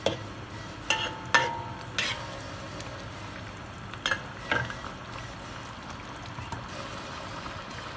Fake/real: real